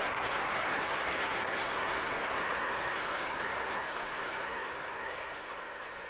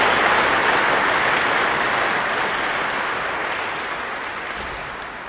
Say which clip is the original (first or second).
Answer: second